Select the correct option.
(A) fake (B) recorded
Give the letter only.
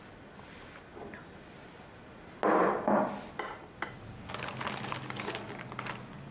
B